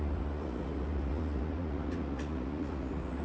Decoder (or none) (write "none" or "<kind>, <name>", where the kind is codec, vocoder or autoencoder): vocoder, Vocos